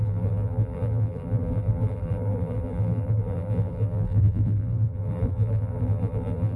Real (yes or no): no